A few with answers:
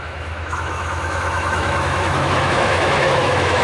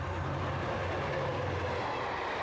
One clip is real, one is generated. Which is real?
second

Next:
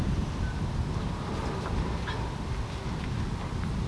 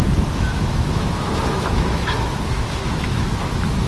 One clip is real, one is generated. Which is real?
first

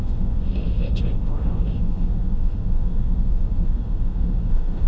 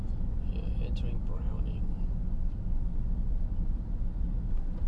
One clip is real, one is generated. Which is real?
second